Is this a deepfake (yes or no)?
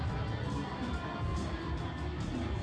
no